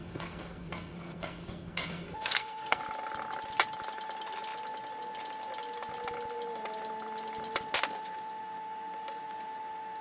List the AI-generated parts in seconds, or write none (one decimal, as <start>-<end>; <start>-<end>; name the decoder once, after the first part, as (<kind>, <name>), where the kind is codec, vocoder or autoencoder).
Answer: 0.0-2.8 (codec, SNAC)